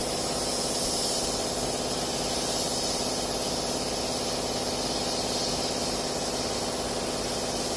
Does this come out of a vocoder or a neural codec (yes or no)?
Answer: no